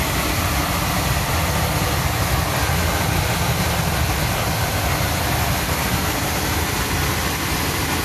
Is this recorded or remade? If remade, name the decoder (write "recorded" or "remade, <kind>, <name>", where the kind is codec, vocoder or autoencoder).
recorded